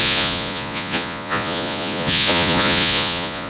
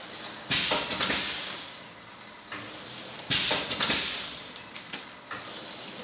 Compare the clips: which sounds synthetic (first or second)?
first